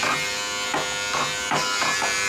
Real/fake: real